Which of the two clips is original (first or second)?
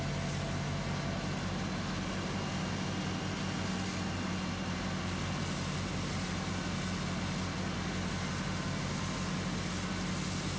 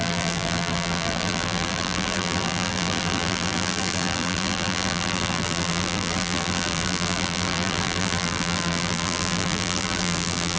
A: first